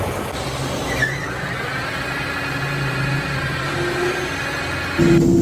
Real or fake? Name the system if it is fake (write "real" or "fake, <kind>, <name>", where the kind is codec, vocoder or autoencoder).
real